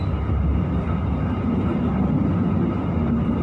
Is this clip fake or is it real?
real